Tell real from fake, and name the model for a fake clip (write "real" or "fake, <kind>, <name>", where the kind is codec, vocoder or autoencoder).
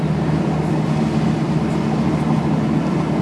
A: real